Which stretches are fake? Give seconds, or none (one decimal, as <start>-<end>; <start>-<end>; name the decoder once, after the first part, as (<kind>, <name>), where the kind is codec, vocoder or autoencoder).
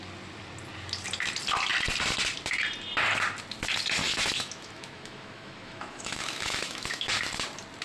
4.0-7.1 (autoencoder, DAC-VAE)